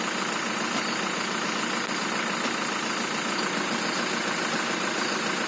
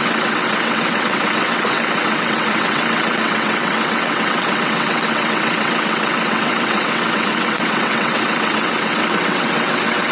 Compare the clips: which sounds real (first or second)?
first